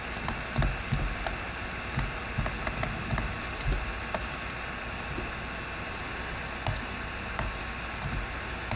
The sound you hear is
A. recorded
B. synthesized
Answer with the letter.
A